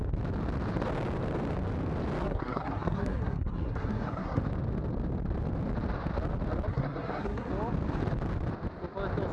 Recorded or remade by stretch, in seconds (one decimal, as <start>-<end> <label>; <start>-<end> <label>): 0.0-2.2 recorded; 2.2-4.4 remade; 4.4-6.7 recorded; 6.7-7.5 remade; 7.5-9.3 recorded